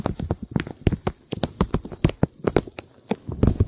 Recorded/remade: recorded